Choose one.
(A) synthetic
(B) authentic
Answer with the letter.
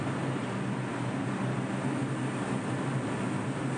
B